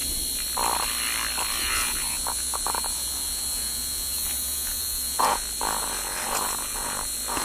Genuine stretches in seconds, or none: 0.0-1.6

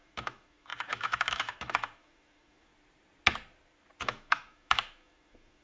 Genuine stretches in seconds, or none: 2.7-4.0

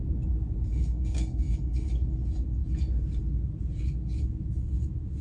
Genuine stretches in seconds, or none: 0.0-0.7; 1.9-5.2

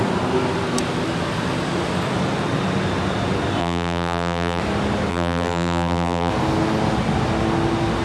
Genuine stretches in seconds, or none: 0.0-3.6; 4.6-5.1; 6.3-8.0

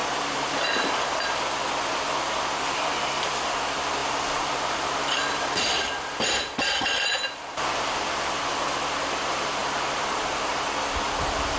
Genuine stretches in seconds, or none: 9.6-11.6